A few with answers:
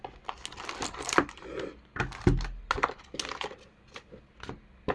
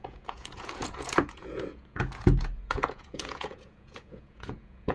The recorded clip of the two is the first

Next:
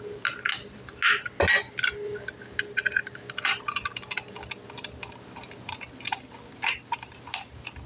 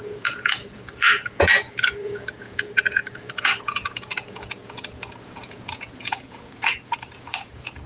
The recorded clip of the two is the first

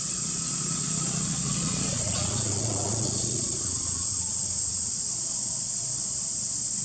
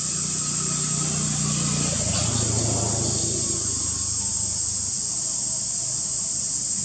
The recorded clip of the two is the second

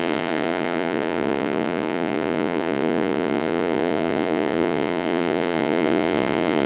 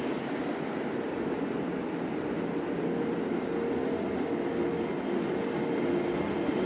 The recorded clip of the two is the second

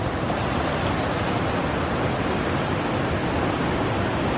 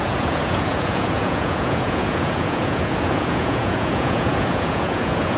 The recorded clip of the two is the first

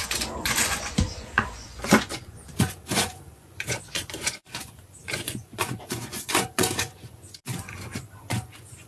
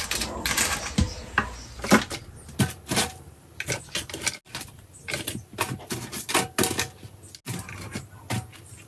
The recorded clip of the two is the second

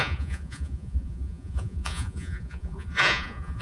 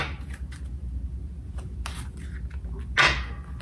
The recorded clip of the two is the second